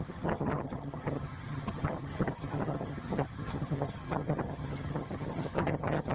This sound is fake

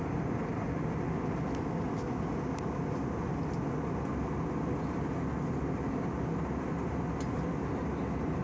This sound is real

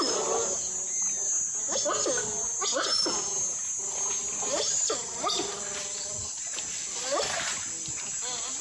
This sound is real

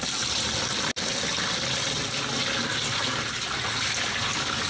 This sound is real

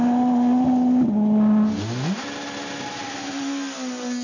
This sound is real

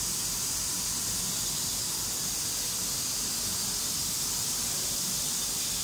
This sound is real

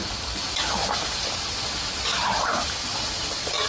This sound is real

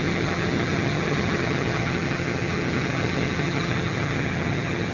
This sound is fake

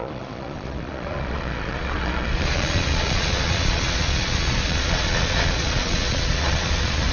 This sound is fake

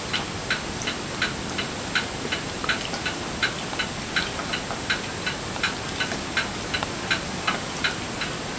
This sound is real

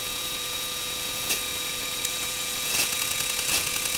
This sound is fake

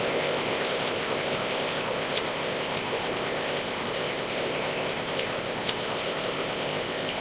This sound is fake